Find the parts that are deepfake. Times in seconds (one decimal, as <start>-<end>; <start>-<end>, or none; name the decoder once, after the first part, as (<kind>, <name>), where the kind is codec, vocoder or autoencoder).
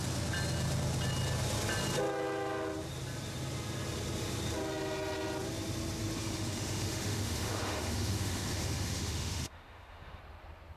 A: 6.2-10.2 (autoencoder, DAC-VAE)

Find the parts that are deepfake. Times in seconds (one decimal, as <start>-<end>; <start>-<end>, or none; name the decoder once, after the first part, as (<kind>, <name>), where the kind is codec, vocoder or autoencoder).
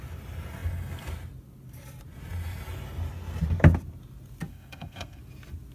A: 4.5-5.2 (codec, SNAC)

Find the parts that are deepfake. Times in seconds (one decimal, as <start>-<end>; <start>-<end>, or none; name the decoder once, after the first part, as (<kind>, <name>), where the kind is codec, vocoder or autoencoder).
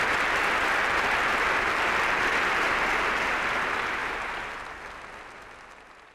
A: 1.3-3.1 (vocoder, BigVGAN v2)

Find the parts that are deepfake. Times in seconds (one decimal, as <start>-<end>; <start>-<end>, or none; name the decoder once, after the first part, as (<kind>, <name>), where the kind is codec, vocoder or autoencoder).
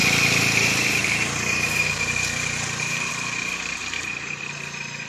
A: 0.0-3.1 (vocoder, BigVGAN v2); 3.8-4.4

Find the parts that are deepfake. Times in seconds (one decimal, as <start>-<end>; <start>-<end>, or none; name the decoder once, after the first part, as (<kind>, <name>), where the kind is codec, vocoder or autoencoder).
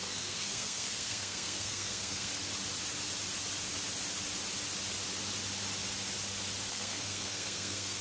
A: 0.0-2.3 (codec, SNAC); 6.7-8.0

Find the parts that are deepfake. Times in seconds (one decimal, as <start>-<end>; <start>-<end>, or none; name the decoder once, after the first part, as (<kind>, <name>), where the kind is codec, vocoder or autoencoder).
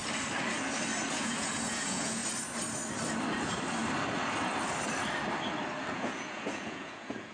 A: 1.1-2.2 (vocoder, Vocos); 5.9-7.3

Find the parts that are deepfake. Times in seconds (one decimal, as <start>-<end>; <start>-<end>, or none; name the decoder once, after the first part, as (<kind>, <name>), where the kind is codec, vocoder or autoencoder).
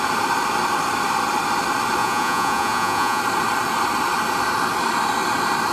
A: 2.0-3.2 (vocoder, Vocos)